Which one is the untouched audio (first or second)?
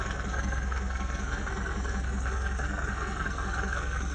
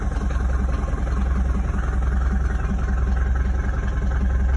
second